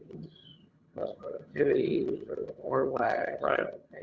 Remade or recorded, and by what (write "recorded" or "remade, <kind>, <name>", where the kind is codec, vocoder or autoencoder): remade, vocoder, HiFi-GAN